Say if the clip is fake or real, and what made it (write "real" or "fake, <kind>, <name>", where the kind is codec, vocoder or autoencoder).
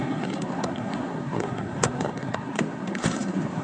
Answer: fake, codec, SNAC